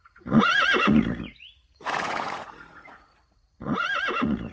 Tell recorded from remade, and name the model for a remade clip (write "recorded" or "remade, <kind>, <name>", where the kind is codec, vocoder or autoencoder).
remade, vocoder, Vocos